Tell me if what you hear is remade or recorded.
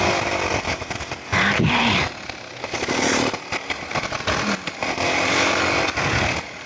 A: recorded